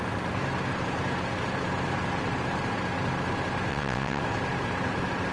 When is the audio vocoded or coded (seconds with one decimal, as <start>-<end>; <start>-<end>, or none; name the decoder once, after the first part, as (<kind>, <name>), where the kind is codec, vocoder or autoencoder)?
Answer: 3.7-4.2 (vocoder, WaveNeXt)